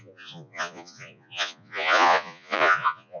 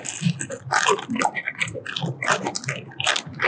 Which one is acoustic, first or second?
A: second